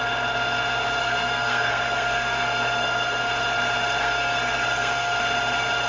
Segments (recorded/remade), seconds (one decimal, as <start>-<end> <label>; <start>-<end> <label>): 0.0-1.0 recorded; 1.0-3.3 remade; 3.3-4.0 recorded; 4.0-5.2 remade; 5.2-5.9 recorded